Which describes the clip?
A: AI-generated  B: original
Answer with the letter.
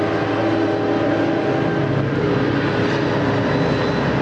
B